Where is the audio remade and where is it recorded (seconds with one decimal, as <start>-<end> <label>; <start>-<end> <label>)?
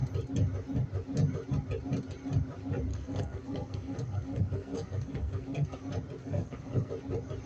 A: 0.0-2.9 recorded; 2.9-5.8 remade; 5.8-6.2 recorded; 6.2-6.9 remade; 6.9-7.5 recorded